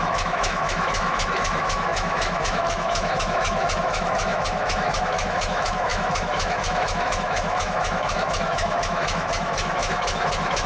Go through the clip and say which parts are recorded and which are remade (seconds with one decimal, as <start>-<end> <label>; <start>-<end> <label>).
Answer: 0.0-10.7 remade